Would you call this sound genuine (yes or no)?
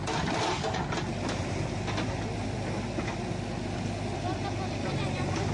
yes